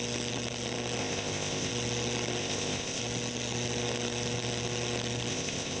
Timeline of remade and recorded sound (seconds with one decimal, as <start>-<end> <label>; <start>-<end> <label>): 0.0-1.0 recorded; 1.0-1.7 remade; 1.7-2.4 recorded; 2.4-3.0 remade; 3.0-5.3 recorded; 5.3-5.8 remade

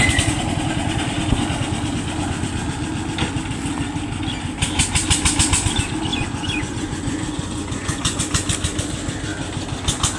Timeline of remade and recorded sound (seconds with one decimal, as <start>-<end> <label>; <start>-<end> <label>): 0.0-6.1 recorded; 6.1-8.2 remade; 8.2-10.2 recorded

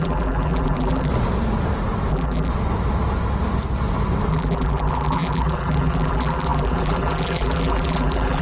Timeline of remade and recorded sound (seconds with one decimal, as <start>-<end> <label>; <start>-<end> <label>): 0.0-1.1 remade; 1.1-2.1 recorded; 2.1-2.5 remade; 2.5-4.3 recorded; 4.3-8.4 remade

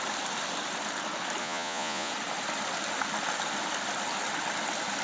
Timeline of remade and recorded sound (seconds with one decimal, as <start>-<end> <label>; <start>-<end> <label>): 0.0-1.4 recorded; 1.4-2.1 remade; 2.1-5.0 recorded

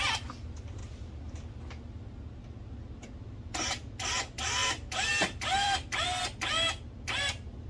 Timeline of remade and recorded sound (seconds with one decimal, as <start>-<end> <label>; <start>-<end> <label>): 0.0-0.8 recorded; 0.8-1.6 remade; 1.6-4.6 recorded; 4.6-6.2 remade; 6.2-7.7 recorded